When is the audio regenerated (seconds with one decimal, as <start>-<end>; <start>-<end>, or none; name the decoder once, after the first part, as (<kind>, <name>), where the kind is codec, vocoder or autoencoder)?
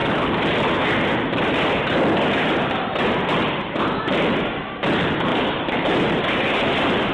5.3-6.2 (vocoder, BigVGAN v2)